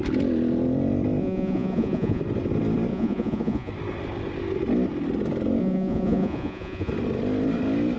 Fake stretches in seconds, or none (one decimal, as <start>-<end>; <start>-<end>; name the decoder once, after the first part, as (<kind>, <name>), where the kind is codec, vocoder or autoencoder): 1.2-2.2 (vocoder, Vocos); 2.9-3.7; 5.6-6.9